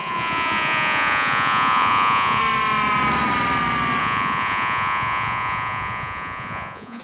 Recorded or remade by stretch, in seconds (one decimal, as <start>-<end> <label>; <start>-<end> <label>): 0.0-2.4 remade; 2.4-4.0 recorded; 4.0-7.0 remade